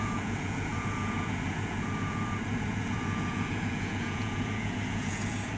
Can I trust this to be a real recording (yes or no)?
no